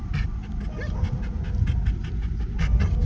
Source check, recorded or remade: recorded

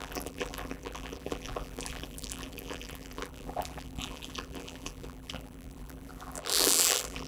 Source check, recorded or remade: remade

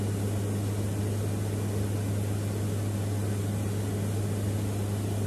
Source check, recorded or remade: recorded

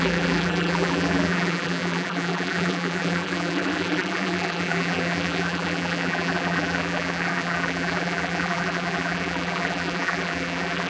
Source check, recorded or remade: remade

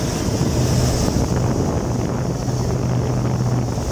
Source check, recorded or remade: recorded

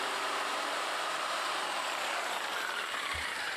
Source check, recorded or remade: remade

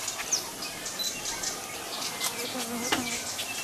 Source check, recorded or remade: recorded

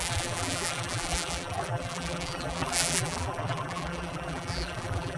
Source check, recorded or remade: remade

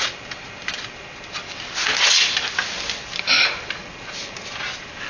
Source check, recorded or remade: recorded